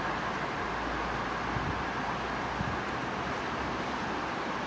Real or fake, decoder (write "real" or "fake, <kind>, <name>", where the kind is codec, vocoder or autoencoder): real